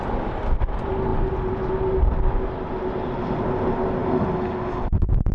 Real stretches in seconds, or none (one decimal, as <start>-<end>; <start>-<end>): 0.0-5.3